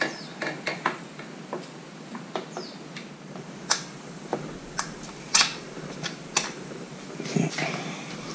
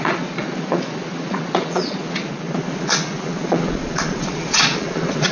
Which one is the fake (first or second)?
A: second